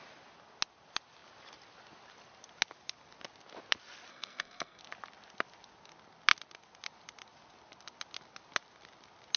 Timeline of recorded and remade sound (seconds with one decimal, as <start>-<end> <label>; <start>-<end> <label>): 0.0-4.1 recorded; 4.1-4.8 remade; 4.8-9.4 recorded